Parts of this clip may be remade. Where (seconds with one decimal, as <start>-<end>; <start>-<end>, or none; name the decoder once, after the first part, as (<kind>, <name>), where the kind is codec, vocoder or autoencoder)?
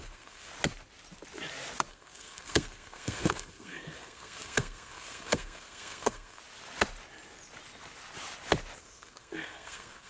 0.0-0.5 (codec, SNAC); 1.9-6.4; 8.8-10.1